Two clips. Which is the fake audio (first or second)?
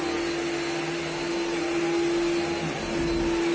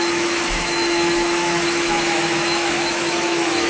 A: second